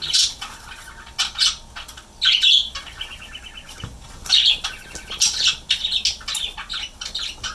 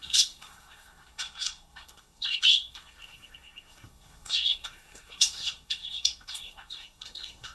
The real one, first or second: first